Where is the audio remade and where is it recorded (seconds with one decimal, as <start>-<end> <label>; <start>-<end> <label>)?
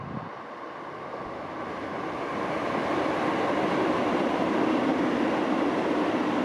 0.0-1.9 recorded; 1.9-4.4 remade; 4.4-6.4 recorded